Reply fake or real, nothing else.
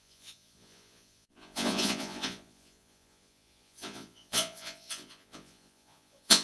fake